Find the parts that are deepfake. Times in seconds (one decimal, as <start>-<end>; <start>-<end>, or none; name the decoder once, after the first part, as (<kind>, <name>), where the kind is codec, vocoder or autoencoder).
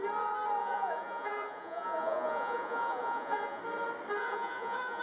0.6-3.6 (vocoder, Vocos); 4.2-5.0